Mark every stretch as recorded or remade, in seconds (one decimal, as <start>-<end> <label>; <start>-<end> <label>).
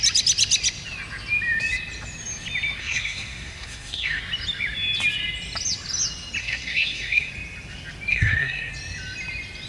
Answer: 0.0-2.8 recorded; 2.8-4.2 remade; 4.2-6.4 recorded; 6.4-7.3 remade; 7.3-8.1 recorded; 8.1-8.7 remade; 8.7-9.7 recorded